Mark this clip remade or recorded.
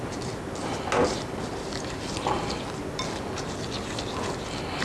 recorded